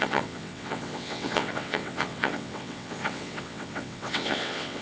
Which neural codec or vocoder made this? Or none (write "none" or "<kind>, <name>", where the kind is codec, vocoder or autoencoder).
vocoder, WaveNeXt